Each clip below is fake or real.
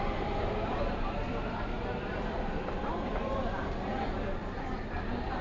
real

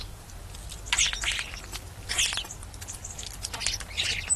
real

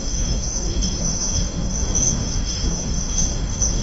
fake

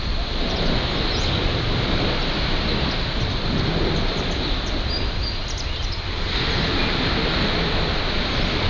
real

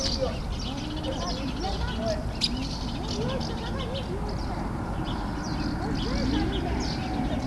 real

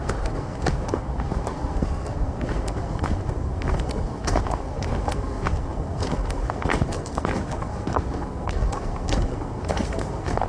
fake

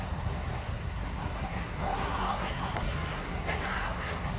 fake